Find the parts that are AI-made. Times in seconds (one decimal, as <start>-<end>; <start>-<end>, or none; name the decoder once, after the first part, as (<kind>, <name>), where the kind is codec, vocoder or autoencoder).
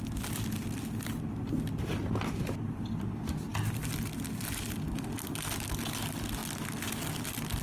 none